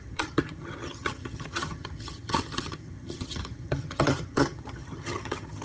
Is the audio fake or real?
fake